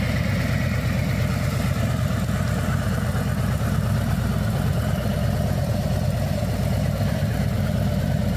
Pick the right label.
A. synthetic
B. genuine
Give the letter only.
A